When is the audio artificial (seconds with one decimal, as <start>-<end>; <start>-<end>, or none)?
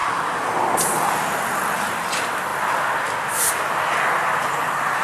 none